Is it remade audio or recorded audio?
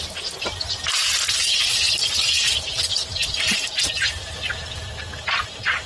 remade